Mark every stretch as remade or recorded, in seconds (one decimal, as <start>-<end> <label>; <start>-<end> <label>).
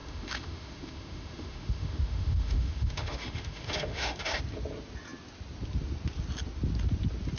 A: 0.0-4.4 remade; 4.4-7.4 recorded